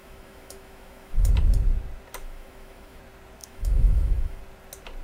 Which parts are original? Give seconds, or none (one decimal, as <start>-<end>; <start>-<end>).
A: 1.3-2.2; 3.0-3.4; 4.4-5.0